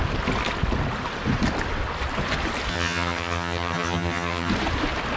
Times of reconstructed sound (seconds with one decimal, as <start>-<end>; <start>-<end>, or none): 2.7-4.5